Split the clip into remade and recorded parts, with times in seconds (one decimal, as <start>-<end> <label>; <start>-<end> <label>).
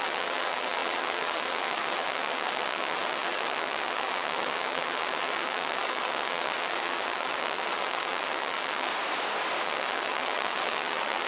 0.0-8.9 remade; 8.9-9.6 recorded; 9.6-11.3 remade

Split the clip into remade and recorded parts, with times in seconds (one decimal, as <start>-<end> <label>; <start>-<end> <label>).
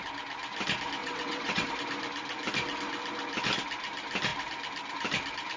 0.0-1.0 recorded; 1.0-1.7 remade; 1.7-5.6 recorded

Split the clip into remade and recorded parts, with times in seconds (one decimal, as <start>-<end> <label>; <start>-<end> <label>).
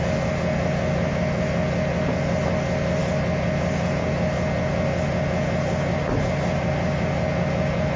0.0-8.0 recorded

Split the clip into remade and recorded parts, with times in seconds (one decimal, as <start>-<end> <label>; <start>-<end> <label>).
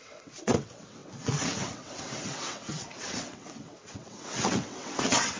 0.0-5.4 remade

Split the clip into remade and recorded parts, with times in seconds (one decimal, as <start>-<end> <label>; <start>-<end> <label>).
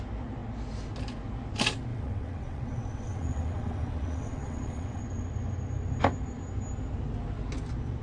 0.0-1.9 recorded; 1.9-5.0 remade; 5.0-8.0 recorded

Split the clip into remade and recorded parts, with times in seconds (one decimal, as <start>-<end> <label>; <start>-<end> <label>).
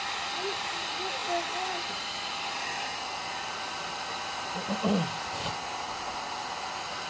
0.0-7.1 recorded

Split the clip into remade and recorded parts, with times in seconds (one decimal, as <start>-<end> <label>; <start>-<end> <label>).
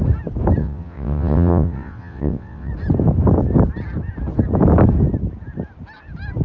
0.0-0.6 recorded; 0.6-2.7 remade; 2.7-6.4 recorded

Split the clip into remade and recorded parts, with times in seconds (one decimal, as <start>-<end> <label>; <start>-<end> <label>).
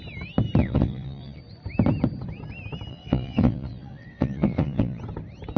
0.0-0.6 recorded; 0.6-1.4 remade; 1.4-2.9 recorded; 2.9-5.0 remade; 5.0-5.6 recorded